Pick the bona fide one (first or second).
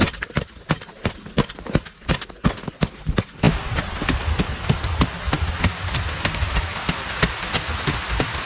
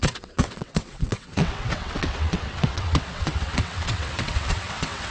first